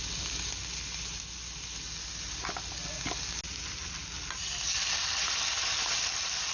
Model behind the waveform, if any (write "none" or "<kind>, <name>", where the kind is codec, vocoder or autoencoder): none